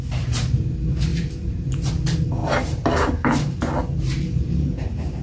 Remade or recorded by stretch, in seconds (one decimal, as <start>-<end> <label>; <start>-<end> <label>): 0.0-2.4 recorded; 2.4-3.3 remade; 3.3-5.2 recorded